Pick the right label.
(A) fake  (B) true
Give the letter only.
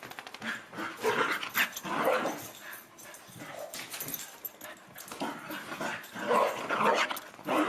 B